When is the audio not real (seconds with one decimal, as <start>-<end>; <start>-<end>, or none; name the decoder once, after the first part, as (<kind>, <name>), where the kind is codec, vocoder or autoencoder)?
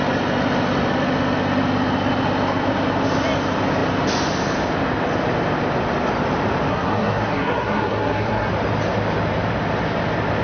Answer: 6.7-8.5 (codec, SNAC)